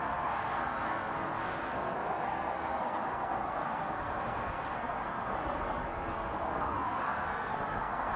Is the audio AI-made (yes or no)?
yes